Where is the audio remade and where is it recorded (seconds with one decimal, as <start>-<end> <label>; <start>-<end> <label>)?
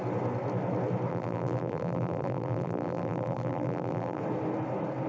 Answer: 0.0-1.1 recorded; 1.1-4.2 remade; 4.2-5.1 recorded